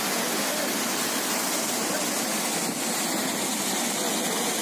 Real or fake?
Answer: real